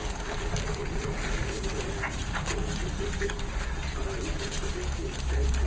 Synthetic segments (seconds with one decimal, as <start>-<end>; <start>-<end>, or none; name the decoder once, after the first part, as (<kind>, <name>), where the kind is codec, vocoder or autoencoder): none